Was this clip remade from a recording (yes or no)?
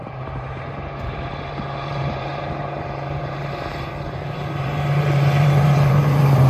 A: yes